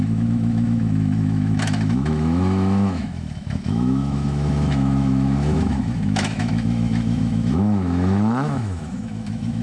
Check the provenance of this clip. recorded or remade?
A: remade